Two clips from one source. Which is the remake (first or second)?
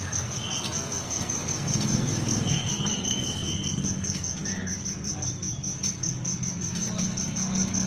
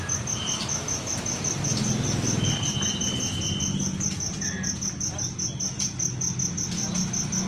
first